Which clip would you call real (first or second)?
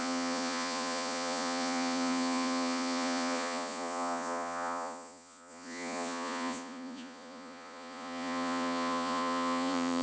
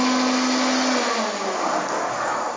second